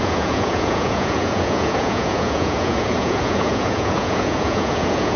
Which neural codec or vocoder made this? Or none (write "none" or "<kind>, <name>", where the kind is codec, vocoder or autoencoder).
vocoder, Vocos